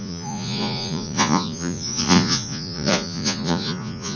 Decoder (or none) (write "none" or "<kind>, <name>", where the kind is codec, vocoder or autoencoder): vocoder, Vocos